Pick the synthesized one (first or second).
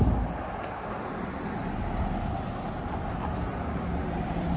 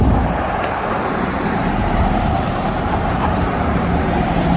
second